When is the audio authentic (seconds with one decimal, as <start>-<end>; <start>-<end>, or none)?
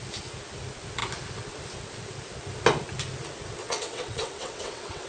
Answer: 0.0-3.6